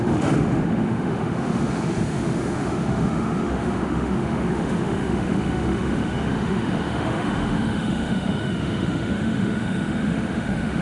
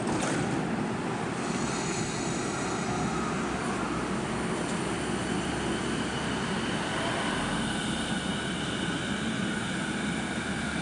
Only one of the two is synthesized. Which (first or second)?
first